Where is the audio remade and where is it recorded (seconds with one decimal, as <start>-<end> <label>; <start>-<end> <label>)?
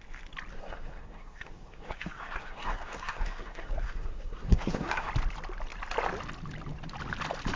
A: 0.0-0.5 recorded; 0.5-5.1 remade; 5.1-7.6 recorded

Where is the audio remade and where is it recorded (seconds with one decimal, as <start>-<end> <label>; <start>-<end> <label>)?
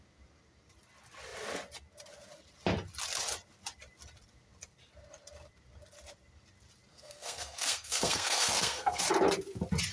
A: 0.0-6.9 recorded; 6.9-9.0 remade; 9.0-9.9 recorded